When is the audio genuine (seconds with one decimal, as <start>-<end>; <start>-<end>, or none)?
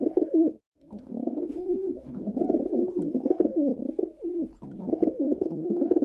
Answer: 2.3-3.1; 3.7-4.8